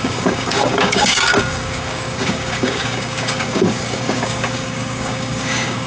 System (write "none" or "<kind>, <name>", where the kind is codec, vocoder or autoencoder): codec, DAC